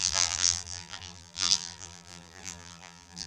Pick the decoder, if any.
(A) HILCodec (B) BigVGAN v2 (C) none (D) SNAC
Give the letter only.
B